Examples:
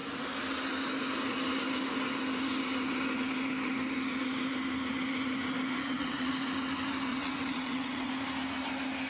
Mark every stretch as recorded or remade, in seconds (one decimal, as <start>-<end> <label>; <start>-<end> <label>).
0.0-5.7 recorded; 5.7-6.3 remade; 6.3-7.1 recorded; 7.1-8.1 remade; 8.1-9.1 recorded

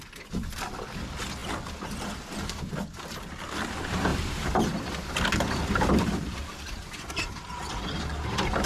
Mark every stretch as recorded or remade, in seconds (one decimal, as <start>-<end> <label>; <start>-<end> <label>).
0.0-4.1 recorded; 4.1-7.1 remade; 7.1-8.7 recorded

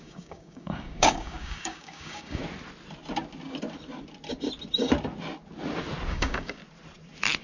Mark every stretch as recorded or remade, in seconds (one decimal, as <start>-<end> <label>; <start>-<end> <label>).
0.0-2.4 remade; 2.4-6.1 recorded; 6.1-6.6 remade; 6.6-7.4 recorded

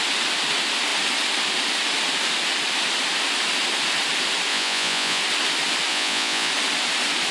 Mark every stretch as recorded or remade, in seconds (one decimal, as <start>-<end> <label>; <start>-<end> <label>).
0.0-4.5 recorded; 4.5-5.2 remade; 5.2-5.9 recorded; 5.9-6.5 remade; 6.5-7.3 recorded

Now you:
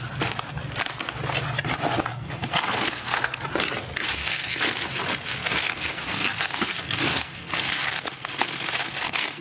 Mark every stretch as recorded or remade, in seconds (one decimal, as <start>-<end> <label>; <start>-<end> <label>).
0.0-2.1 recorded; 2.1-3.4 remade; 3.4-4.2 recorded; 4.2-4.9 remade; 4.9-5.4 recorded; 5.4-9.4 remade

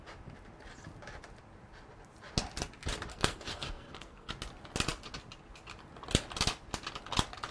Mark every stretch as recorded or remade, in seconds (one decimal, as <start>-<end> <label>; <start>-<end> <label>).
0.0-3.1 recorded; 3.1-4.3 remade; 4.3-7.5 recorded

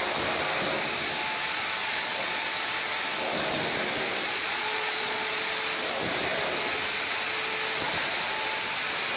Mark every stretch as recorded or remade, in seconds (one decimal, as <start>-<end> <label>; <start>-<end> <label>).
0.0-1.8 recorded; 1.8-2.5 remade; 2.5-4.1 recorded; 4.1-5.4 remade; 5.4-9.2 recorded